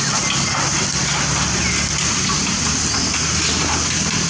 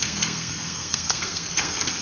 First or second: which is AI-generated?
second